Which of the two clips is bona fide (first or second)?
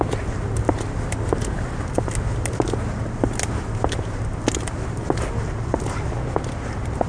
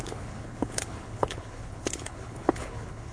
first